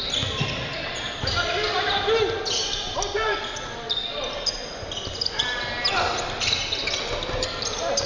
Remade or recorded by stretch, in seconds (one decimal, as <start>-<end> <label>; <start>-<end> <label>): 0.0-8.1 recorded